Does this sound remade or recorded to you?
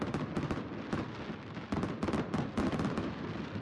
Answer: recorded